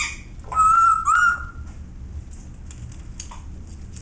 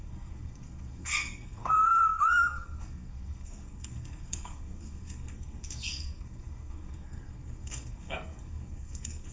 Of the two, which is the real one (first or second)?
first